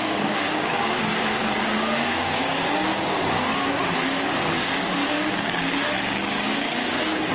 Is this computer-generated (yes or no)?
yes